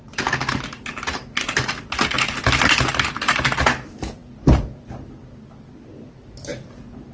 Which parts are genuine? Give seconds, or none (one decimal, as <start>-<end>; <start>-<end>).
0.0-7.1